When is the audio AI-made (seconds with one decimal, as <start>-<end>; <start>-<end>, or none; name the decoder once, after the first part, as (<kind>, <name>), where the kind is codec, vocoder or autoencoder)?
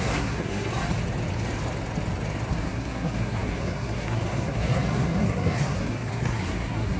0.0-0.7 (codec, SNAC); 2.5-7.0